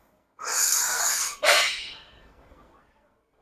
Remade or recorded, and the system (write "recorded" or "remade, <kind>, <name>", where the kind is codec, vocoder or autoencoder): remade, codec, SNAC